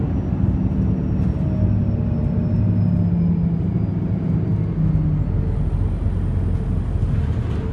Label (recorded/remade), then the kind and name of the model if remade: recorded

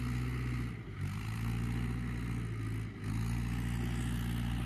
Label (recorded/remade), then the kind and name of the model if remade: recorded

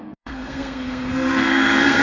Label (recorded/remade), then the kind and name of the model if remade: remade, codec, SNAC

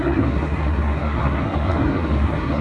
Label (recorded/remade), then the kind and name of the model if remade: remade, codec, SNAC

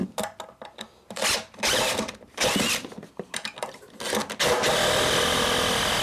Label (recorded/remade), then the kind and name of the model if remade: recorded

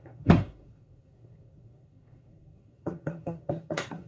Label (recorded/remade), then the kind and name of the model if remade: remade, codec, SNAC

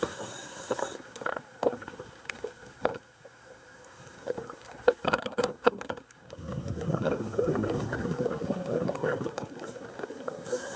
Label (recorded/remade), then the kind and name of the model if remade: remade, codec, SNAC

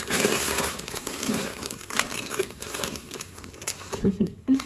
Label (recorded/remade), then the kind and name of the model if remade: remade, codec, SNAC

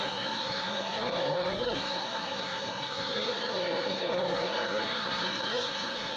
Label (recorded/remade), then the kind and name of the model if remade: remade, codec, SNAC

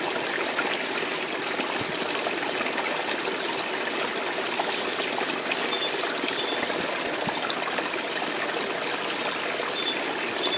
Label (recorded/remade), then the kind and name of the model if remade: recorded